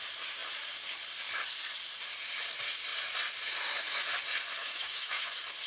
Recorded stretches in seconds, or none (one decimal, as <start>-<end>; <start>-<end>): 0.0-4.6; 5.3-5.7

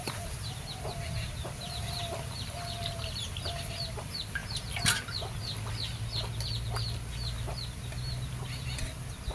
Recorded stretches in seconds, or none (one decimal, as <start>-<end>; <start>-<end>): 4.4-4.9; 7.5-9.3

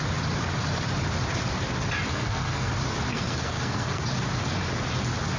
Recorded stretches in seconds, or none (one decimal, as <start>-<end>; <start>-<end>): 0.0-2.1; 2.7-3.1; 4.0-5.4

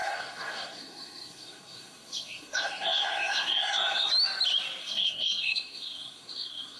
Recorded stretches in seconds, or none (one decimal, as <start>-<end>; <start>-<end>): 4.1-4.8

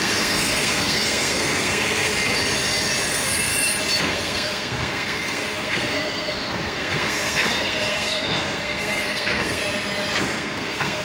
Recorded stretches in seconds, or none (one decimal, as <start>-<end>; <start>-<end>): 2.1-3.1; 3.5-4.0; 9.6-10.2

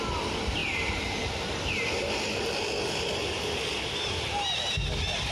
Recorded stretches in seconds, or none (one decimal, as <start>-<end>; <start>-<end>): 0.0-5.3